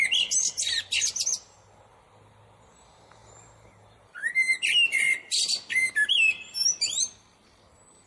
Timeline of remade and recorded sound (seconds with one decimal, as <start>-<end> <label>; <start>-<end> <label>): 0.0-8.1 recorded